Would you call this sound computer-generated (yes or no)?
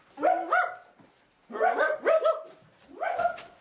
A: yes